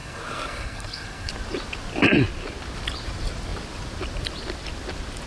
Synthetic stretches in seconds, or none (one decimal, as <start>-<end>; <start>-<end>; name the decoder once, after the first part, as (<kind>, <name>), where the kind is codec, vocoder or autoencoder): 0.0-1.3 (codec, SNAC)

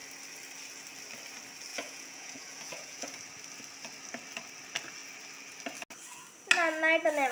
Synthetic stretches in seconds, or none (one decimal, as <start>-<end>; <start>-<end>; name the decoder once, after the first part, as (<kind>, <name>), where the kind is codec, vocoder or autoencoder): 1.7-3.1 (vocoder, Vocos)

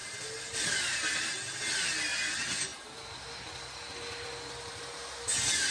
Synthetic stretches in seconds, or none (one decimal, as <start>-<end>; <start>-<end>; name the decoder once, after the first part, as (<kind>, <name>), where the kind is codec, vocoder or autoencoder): none

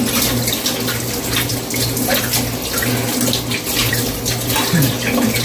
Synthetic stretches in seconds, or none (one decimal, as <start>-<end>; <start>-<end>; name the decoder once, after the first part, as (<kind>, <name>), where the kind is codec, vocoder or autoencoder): none

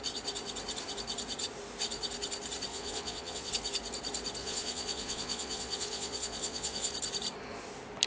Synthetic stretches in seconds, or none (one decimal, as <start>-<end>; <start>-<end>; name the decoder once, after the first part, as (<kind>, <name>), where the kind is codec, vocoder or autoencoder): 2.7-3.5 (vocoder, Vocos); 4.4-6.9

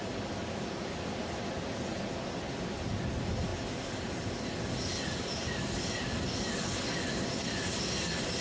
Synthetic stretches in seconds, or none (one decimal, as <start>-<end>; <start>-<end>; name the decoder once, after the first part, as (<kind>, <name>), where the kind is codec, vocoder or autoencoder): none